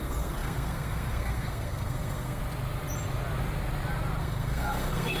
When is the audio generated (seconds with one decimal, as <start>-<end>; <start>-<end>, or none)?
0.0-2.4; 4.2-5.2